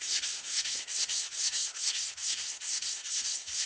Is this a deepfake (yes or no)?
yes